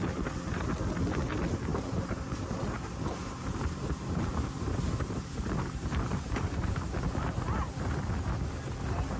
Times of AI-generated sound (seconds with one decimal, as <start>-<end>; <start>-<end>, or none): 1.7-6.9